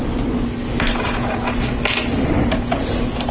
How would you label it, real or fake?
real